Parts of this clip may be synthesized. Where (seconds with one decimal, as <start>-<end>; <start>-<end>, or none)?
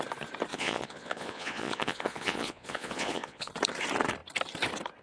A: 0.5-3.5